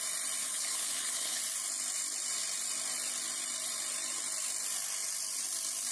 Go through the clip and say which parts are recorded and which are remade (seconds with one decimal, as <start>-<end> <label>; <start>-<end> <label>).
0.0-0.4 recorded; 0.4-1.4 remade; 1.4-5.9 recorded